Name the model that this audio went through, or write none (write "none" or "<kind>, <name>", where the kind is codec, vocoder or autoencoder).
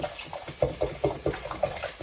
none